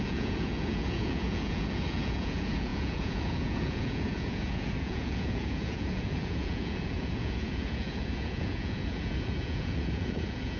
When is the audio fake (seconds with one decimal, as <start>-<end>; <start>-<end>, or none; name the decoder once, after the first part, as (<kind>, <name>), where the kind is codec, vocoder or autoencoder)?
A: 0.0-10.6 (vocoder, Vocos)